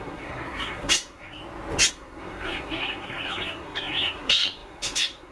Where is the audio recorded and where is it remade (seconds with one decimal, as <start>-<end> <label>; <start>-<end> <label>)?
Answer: 0.0-1.4 remade; 1.4-1.9 recorded; 1.9-5.3 remade